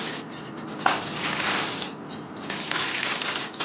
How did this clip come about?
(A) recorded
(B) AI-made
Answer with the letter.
A